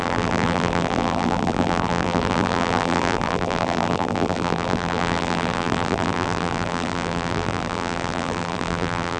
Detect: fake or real fake